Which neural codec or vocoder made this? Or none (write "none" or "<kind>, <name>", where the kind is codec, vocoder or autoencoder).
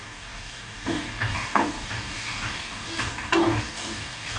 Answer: codec, DAC